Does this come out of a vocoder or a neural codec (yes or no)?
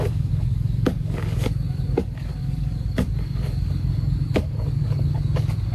yes